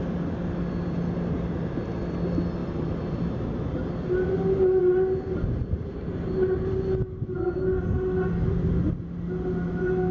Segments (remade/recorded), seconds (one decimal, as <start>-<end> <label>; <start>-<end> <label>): 0.0-10.1 recorded